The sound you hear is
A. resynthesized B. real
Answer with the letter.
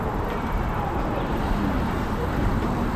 A